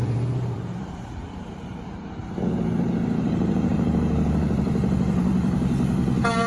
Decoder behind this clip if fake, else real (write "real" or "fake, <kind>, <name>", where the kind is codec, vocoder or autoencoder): fake, vocoder, BigVGAN v2